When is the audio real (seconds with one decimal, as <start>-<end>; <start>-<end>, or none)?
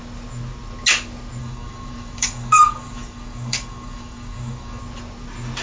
0.0-1.4; 4.8-5.6